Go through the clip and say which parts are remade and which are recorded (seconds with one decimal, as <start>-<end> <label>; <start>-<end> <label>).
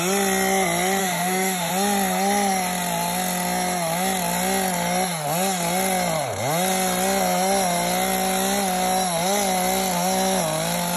0.0-1.0 recorded; 1.0-1.7 remade; 1.7-11.0 recorded